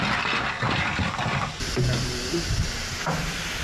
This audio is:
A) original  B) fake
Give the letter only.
A